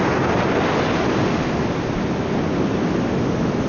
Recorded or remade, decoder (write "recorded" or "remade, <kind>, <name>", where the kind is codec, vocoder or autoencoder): recorded